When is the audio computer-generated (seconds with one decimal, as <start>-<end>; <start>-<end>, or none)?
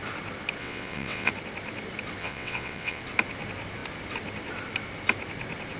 0.6-1.3; 2.2-3.0